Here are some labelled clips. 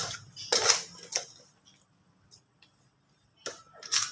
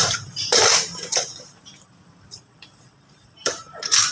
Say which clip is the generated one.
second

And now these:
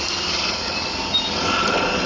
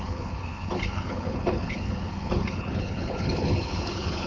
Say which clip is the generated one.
second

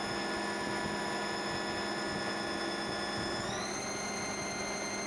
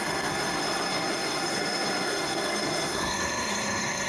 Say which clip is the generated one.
second